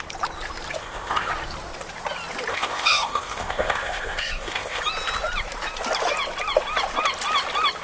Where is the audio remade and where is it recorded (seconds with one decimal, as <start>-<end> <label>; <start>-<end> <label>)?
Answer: 0.0-0.8 recorded; 0.8-1.3 remade; 1.3-2.5 recorded; 2.5-4.8 remade; 4.8-7.8 recorded